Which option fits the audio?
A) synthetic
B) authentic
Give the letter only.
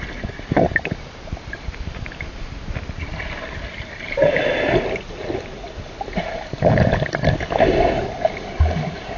B